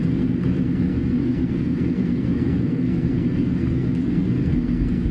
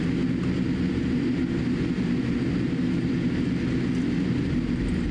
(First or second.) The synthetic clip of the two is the first